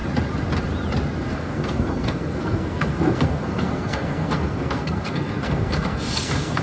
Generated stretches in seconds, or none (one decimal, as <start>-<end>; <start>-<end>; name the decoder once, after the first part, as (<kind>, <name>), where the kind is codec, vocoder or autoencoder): 1.3-6.6 (codec, SNAC)